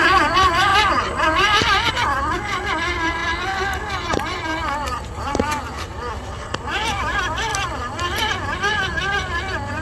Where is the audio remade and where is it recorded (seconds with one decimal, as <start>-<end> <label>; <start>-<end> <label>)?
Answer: 0.0-9.8 recorded